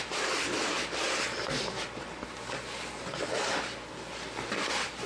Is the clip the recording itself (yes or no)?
yes